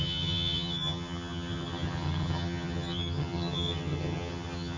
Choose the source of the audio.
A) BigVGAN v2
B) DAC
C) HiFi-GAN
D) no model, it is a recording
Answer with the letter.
C